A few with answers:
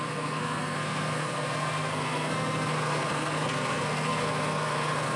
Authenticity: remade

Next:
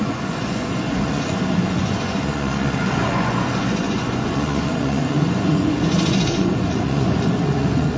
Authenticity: remade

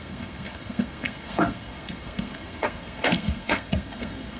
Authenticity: remade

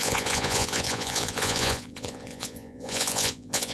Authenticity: remade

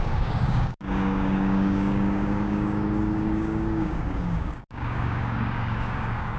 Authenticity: remade